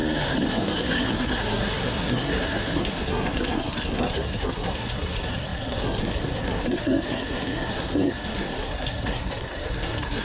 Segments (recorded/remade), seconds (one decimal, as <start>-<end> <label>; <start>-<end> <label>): 0.0-0.5 recorded; 0.5-10.2 remade